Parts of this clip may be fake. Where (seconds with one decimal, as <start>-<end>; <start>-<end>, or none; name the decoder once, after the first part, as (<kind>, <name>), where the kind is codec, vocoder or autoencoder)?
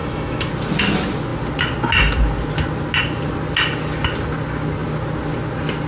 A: 0.0-0.5 (autoencoder, DAC-VAE)